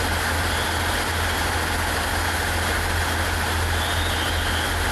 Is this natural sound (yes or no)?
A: yes